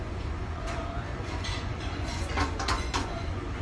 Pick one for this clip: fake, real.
fake